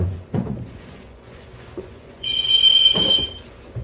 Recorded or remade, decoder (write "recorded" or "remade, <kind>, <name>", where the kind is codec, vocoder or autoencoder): remade, vocoder, Vocos